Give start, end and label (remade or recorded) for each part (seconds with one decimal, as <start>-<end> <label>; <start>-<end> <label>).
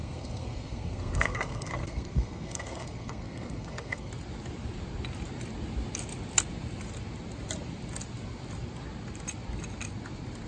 0.0-4.1 remade; 4.1-10.5 recorded